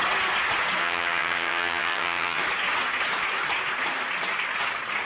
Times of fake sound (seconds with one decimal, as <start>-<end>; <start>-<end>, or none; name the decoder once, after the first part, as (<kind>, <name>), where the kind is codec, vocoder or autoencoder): 0.8-2.4 (vocoder, HiFi-GAN)